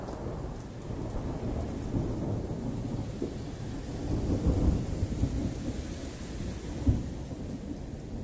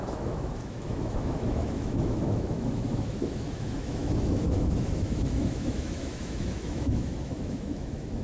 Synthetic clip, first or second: second